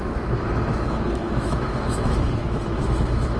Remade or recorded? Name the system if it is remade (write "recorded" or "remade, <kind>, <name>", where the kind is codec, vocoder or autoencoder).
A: remade, autoencoder, DAC-VAE